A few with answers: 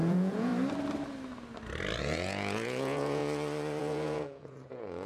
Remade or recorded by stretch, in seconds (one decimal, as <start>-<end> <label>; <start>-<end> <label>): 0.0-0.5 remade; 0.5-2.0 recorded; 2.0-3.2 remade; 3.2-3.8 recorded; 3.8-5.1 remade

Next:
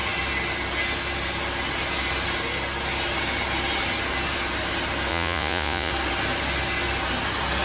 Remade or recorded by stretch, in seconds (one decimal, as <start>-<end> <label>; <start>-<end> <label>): 0.0-5.1 recorded; 5.1-5.9 remade; 5.9-7.6 recorded

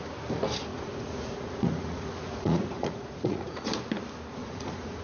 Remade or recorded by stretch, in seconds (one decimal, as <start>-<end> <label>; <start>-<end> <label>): 0.0-0.7 recorded; 0.7-3.7 remade; 3.7-4.4 recorded; 4.4-5.0 remade

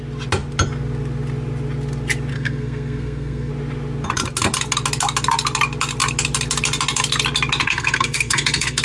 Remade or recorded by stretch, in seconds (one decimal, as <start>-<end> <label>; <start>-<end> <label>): 0.0-2.3 recorded; 2.3-3.5 remade; 3.5-7.6 recorded; 7.6-8.8 remade

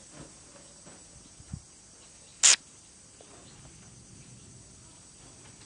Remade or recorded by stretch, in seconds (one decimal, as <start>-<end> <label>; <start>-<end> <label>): 0.0-5.7 recorded

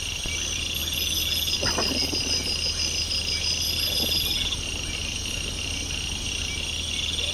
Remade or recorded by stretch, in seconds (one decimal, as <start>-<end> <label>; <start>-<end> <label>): 0.0-7.3 recorded

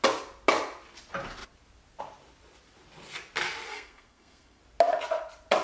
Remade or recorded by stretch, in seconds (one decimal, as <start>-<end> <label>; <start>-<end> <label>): 0.0-3.7 recorded; 3.7-4.6 remade; 4.6-5.6 recorded

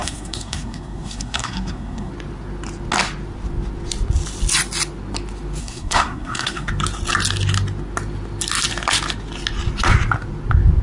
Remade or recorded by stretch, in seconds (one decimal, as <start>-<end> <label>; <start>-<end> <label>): 0.0-2.1 remade; 2.1-5.6 recorded; 5.6-6.7 remade; 6.7-10.8 recorded